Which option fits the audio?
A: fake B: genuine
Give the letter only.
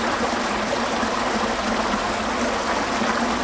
B